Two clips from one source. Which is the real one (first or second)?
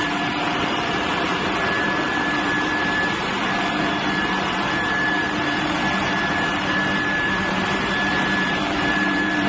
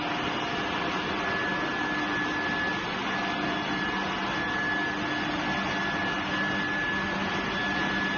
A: second